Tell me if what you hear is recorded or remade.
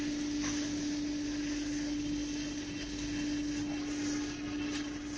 recorded